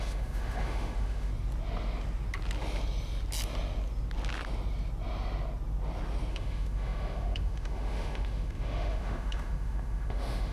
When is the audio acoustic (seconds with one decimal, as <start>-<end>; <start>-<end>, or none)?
1.3-6.3